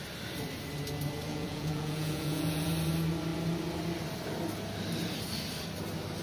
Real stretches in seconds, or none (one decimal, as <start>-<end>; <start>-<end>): 0.0-1.3; 2.7-6.2